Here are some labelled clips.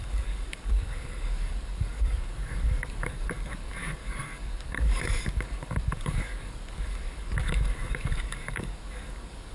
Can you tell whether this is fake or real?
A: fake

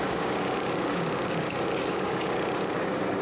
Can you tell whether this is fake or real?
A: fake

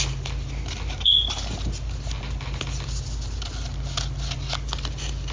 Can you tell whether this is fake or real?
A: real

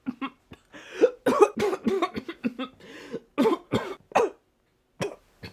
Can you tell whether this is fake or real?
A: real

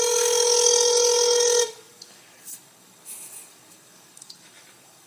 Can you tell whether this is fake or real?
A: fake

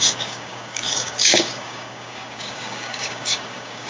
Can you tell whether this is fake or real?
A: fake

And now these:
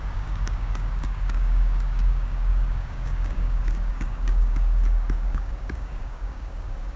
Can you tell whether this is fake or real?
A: fake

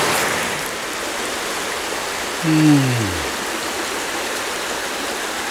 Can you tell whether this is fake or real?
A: real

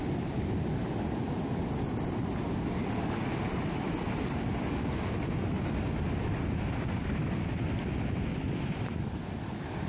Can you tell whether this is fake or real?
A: real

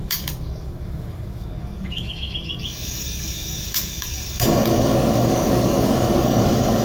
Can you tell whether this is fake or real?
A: fake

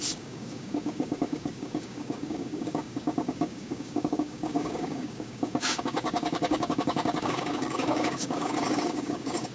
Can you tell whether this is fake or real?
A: fake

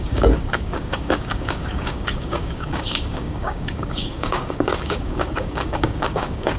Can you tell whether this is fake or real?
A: fake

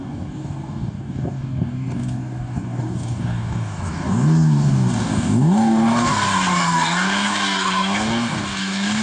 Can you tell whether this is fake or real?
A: fake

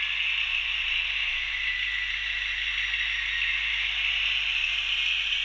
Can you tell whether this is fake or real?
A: real